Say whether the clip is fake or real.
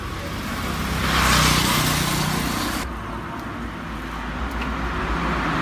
real